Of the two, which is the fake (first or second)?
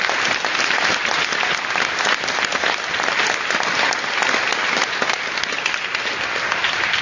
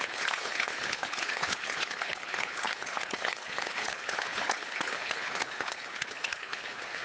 second